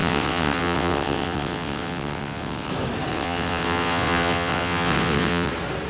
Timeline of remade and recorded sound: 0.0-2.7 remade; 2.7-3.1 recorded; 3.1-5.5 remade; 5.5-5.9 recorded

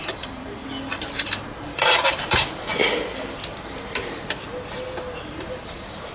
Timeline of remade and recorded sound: 0.0-0.6 remade; 0.6-1.7 recorded; 1.7-2.8 remade; 2.8-5.3 recorded; 5.3-6.1 remade

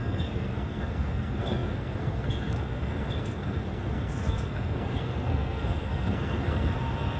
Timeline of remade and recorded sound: 0.0-7.2 remade

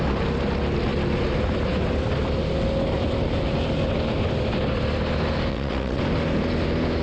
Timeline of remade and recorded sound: 0.0-5.5 recorded; 5.5-6.0 remade; 6.0-7.0 recorded